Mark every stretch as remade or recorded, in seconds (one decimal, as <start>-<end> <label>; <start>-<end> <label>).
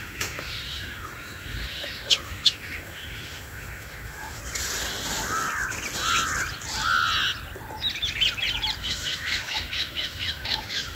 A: 0.0-4.4 remade; 4.4-8.8 recorded; 8.8-10.9 remade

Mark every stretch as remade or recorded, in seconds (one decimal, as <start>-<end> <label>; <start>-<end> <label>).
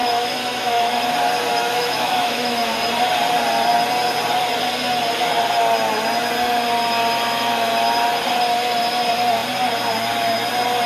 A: 0.0-1.0 remade; 1.0-1.5 recorded; 1.5-2.7 remade; 2.7-10.9 recorded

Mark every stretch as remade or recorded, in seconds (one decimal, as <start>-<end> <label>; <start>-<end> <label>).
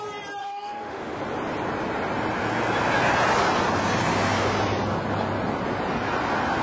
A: 0.0-0.4 recorded; 0.4-1.2 remade; 1.2-6.6 recorded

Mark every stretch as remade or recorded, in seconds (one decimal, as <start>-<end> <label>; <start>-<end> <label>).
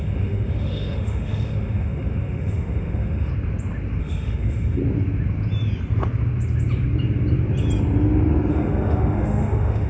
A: 0.0-3.3 remade; 3.3-4.0 recorded; 4.0-4.8 remade; 4.8-8.5 recorded; 8.5-9.9 remade